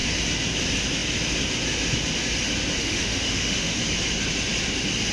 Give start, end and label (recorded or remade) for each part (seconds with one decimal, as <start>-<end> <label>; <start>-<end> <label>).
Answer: 0.0-2.8 recorded; 2.8-3.8 remade; 3.8-5.1 recorded